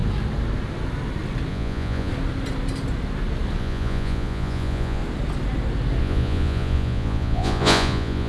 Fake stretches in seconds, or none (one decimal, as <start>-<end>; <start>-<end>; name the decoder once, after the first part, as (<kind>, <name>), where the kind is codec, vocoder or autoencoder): 1.5-2.1 (vocoder, Vocos); 3.6-5.0; 6.0-8.3